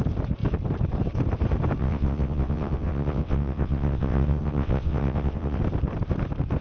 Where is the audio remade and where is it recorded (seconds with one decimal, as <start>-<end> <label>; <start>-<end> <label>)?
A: 0.0-1.8 recorded; 1.8-5.6 remade; 5.6-6.6 recorded